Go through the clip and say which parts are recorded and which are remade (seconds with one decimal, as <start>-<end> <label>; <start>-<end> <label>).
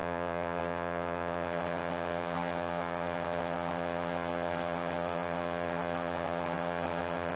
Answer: 0.0-7.4 remade